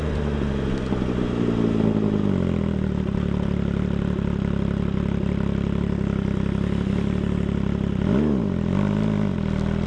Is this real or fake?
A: real